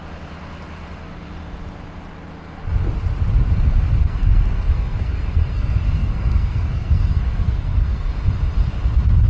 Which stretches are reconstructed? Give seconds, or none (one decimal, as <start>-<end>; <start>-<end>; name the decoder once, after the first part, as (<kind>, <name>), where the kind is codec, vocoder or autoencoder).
4.0-8.1 (codec, SNAC)